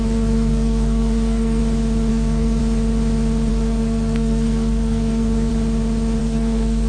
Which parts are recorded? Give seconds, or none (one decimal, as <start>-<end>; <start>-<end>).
1.6-2.1; 2.6-3.5; 5.5-6.2